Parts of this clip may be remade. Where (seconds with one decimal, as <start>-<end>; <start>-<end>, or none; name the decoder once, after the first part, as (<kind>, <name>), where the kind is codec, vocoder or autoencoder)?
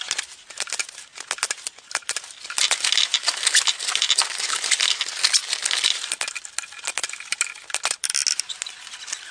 none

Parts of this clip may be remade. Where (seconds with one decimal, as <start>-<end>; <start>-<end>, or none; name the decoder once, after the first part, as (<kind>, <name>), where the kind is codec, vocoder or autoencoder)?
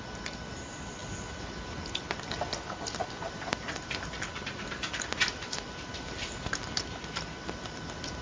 none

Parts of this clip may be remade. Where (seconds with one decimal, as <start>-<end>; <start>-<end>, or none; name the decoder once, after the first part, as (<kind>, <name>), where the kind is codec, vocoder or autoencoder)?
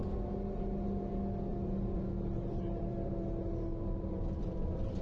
1.5-3.1 (vocoder, BigVGAN v2); 3.7-5.0